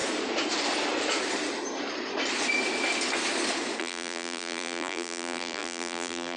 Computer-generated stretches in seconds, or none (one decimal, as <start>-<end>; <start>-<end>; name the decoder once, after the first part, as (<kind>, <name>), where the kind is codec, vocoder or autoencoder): 3.8-6.4 (vocoder, BigVGAN v2)